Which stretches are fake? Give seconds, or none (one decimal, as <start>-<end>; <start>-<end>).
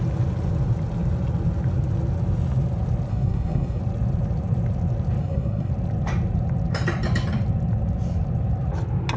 3.1-3.8; 5.2-5.7